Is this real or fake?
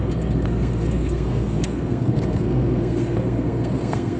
fake